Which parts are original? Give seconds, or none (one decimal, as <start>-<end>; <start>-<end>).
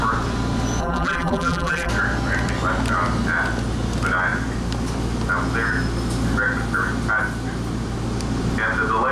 0.0-0.8; 1.9-9.1